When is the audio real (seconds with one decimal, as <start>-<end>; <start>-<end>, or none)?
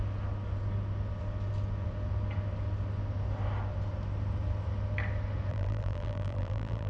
0.0-5.5